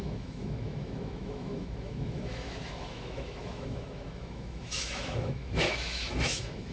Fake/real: fake